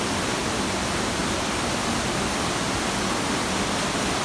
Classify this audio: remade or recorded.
recorded